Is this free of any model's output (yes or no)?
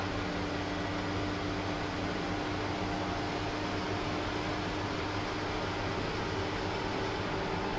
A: yes